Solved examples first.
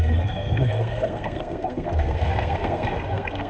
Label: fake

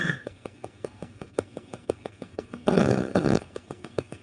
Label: fake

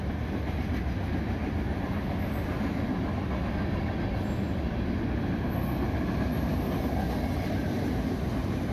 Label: real